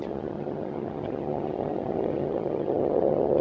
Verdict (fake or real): fake